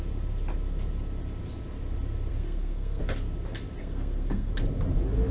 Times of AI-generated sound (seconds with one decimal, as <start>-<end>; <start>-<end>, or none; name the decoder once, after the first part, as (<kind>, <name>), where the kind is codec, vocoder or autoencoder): 2.3-3.0 (codec, SNAC); 3.8-4.5